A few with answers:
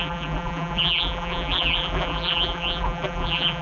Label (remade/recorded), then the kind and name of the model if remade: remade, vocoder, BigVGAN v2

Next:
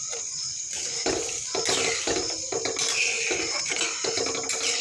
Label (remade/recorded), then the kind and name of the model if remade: recorded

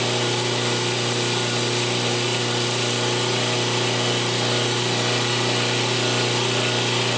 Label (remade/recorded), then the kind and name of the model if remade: recorded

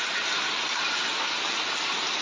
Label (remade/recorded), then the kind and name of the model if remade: recorded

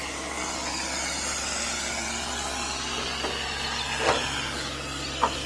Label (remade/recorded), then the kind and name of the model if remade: recorded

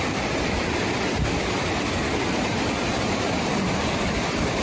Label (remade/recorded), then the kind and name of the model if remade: remade, vocoder, BigVGAN v2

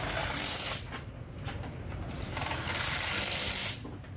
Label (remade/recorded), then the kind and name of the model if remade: remade, vocoder, BigVGAN v2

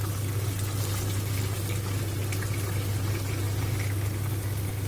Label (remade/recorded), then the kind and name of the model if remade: recorded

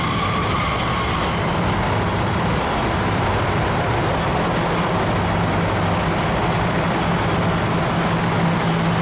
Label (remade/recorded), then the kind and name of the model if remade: recorded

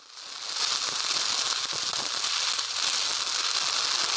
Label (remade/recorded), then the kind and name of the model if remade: recorded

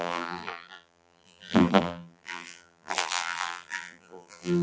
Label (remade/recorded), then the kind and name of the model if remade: remade, vocoder, BigVGAN v2